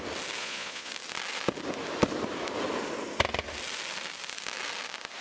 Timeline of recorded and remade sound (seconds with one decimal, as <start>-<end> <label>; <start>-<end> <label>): 0.0-0.4 recorded; 0.4-0.9 remade; 0.9-5.2 recorded